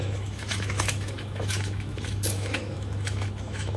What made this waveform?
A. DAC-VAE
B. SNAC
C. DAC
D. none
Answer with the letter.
A